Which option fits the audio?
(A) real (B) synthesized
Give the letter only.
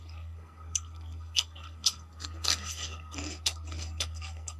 B